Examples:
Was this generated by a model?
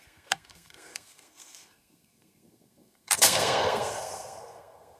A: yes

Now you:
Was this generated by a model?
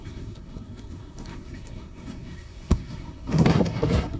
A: yes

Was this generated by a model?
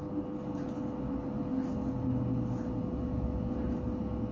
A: no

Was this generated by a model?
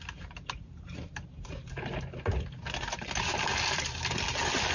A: yes